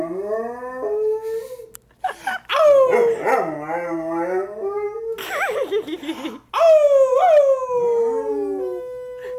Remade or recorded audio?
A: recorded